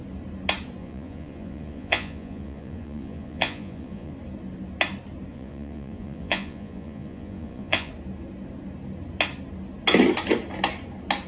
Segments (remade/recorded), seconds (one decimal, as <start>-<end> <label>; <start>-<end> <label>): 0.0-0.8 recorded; 0.8-4.1 remade; 4.1-5.3 recorded; 5.3-7.9 remade; 7.9-11.3 recorded